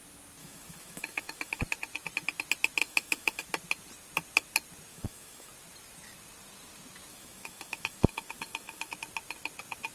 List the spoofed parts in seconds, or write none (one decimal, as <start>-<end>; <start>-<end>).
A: 0.4-1.6; 2.8-3.4; 4.9-5.5; 7.1-8.9